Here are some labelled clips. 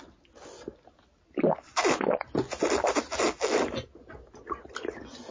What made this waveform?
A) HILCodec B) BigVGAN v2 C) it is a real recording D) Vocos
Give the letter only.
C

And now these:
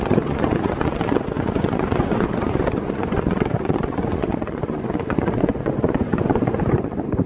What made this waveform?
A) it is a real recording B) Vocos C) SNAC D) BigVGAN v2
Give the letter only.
B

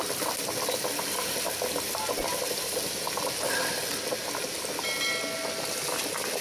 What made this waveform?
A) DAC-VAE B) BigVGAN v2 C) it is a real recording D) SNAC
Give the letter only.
C